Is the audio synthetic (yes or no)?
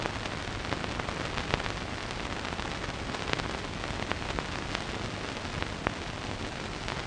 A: no